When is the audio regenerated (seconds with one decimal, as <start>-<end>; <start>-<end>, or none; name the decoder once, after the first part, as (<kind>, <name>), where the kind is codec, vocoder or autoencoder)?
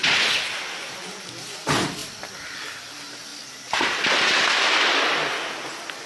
none